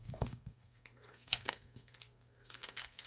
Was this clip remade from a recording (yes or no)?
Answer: yes